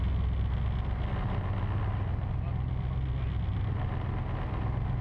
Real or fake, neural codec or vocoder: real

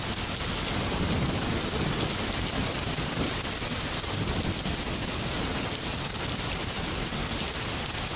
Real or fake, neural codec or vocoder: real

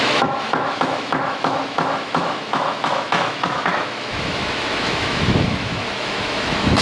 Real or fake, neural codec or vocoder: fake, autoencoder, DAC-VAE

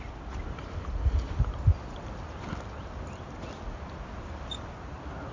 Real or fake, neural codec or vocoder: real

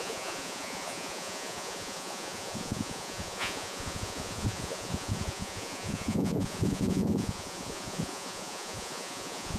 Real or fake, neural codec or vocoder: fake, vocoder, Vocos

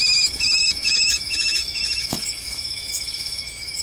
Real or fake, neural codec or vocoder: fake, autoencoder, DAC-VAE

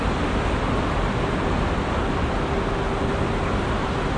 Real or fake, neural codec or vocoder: real